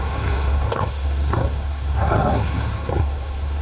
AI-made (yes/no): yes